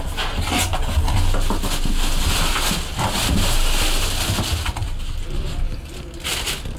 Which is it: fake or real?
real